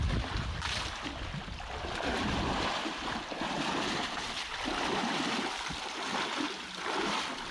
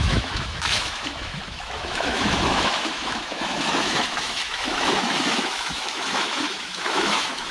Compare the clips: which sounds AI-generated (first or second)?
second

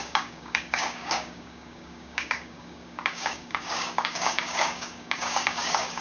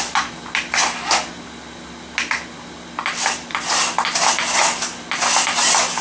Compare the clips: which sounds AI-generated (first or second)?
first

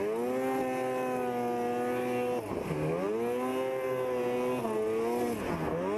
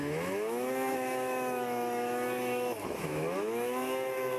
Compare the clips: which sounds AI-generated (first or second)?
second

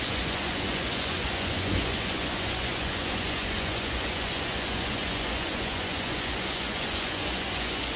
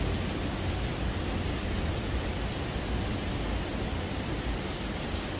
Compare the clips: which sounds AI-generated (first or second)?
first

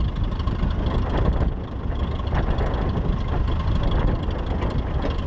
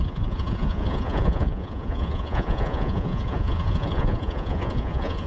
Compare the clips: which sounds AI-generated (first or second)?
second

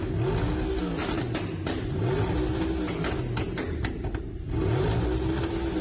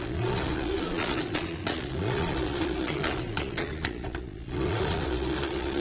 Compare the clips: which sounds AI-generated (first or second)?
second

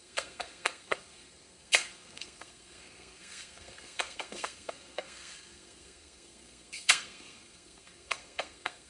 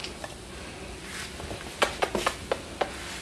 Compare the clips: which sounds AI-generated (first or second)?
first